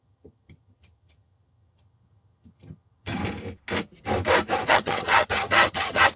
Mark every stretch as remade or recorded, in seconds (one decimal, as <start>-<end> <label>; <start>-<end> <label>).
0.0-3.2 remade; 3.2-4.7 recorded; 4.7-6.2 remade